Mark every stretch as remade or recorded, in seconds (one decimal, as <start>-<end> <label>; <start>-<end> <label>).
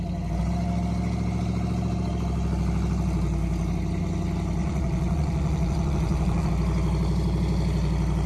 0.0-4.6 recorded; 4.6-6.5 remade; 6.5-8.3 recorded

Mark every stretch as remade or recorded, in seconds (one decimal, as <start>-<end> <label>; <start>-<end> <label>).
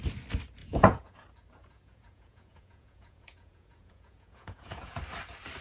0.0-0.6 recorded; 0.6-1.2 remade; 1.2-1.6 recorded; 1.6-5.0 remade; 5.0-5.6 recorded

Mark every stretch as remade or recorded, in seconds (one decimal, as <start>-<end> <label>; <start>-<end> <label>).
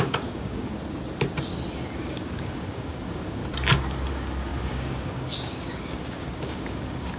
0.0-0.7 remade; 0.7-1.7 recorded; 1.7-3.4 remade; 3.4-4.1 recorded; 4.1-7.2 remade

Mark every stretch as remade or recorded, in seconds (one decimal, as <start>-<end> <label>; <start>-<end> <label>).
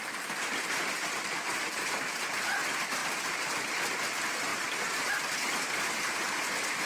0.0-1.5 recorded; 1.5-2.1 remade; 2.1-3.0 recorded; 3.0-3.7 remade; 3.7-6.9 recorded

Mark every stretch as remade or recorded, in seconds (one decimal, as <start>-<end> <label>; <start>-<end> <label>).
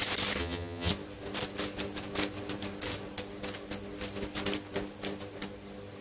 0.0-0.4 recorded; 0.4-0.9 remade; 0.9-6.0 recorded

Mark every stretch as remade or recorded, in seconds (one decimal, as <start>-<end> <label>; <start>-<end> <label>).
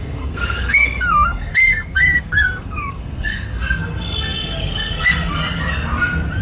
0.0-5.4 remade; 5.4-6.4 recorded